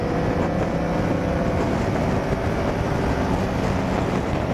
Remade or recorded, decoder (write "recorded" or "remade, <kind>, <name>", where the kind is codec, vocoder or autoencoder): recorded